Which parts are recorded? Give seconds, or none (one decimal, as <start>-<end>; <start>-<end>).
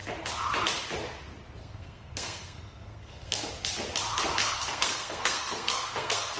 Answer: 0.0-1.6; 3.5-4.4